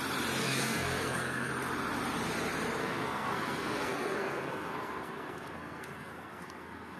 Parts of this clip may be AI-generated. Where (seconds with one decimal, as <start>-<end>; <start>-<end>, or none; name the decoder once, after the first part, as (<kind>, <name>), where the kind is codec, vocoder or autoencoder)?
0.4-1.5 (codec, SNAC); 2.8-7.0